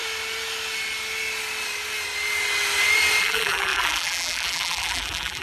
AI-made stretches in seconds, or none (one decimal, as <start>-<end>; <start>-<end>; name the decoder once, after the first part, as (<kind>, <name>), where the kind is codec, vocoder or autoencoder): 3.2-5.4 (vocoder, BigVGAN v2)